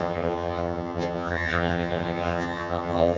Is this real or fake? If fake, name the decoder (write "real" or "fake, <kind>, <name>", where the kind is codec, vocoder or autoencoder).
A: fake, vocoder, HiFi-GAN